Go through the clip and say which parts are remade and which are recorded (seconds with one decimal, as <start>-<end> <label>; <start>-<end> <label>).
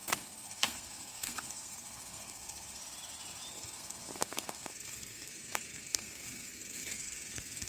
0.0-2.8 remade; 2.8-3.5 recorded; 3.5-7.7 remade